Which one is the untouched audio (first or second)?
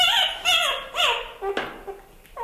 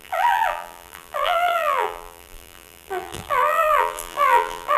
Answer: first